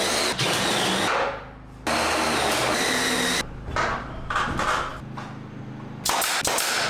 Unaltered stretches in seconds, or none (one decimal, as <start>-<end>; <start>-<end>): 0.0-6.9